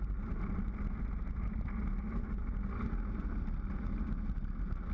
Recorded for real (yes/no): yes